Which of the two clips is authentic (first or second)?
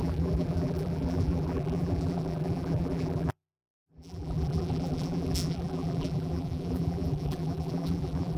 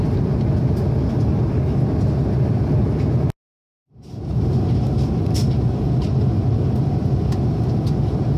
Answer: second